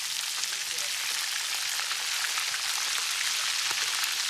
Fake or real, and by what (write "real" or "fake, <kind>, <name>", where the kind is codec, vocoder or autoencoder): real